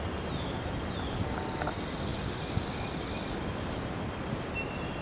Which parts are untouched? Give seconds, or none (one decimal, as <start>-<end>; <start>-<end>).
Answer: 0.0-5.0